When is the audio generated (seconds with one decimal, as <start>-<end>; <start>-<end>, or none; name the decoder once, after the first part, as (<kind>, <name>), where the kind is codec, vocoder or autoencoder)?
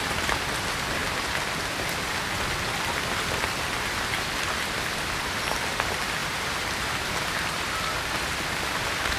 none